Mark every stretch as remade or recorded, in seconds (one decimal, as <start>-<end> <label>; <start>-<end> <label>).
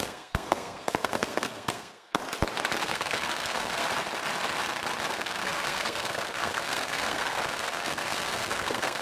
0.0-2.2 remade; 2.2-2.8 recorded; 2.8-3.8 remade; 3.8-5.1 recorded; 5.1-9.0 remade